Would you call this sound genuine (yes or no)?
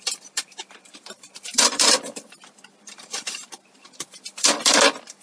no